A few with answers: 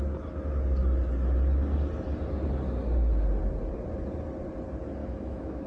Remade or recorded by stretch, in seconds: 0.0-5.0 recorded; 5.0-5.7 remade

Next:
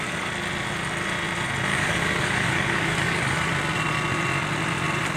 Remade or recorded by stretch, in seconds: 0.0-1.7 recorded; 1.7-3.5 remade; 3.5-5.2 recorded

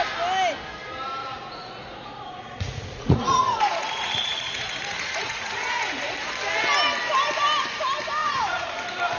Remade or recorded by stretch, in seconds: 0.0-1.2 recorded; 1.2-6.1 remade; 6.1-8.2 recorded; 8.2-8.7 remade; 8.7-9.2 recorded

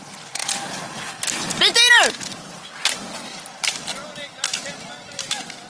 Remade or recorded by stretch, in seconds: 0.0-5.7 recorded

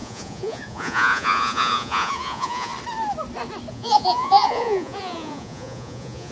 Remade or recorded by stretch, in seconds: 0.0-2.7 remade; 2.7-3.7 recorded; 3.7-6.3 remade

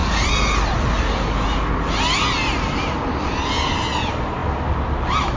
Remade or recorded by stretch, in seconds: 0.0-5.4 recorded

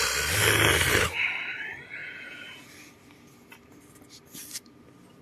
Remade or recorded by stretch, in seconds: 0.0-2.0 recorded; 2.0-2.7 remade; 2.7-5.2 recorded

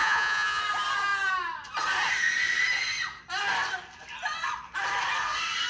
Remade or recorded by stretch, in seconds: 0.0-0.6 remade; 0.6-5.7 recorded